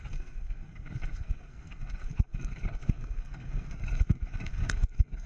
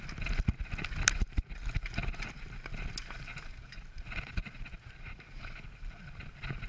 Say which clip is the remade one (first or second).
first